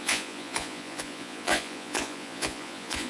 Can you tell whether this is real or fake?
fake